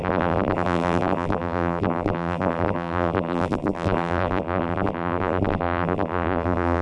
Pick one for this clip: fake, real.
fake